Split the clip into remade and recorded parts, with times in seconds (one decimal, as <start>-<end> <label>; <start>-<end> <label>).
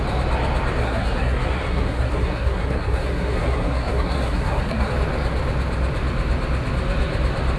0.0-0.8 recorded; 0.8-4.9 remade; 4.9-7.6 recorded